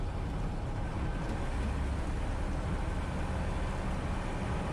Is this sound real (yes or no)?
yes